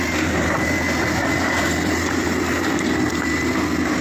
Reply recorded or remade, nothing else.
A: recorded